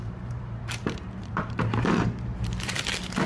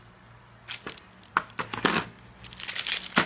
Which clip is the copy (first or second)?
first